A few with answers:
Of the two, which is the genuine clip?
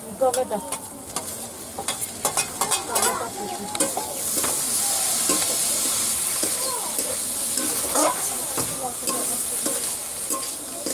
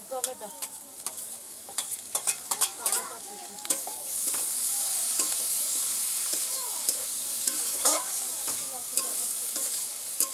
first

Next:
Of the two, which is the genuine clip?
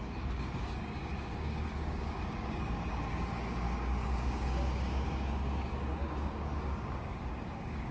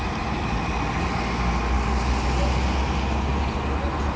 second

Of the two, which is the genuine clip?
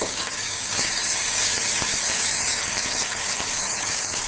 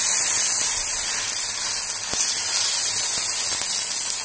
second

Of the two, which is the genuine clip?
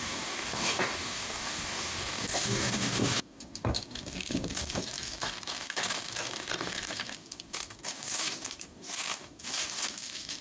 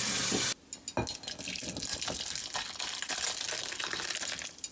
second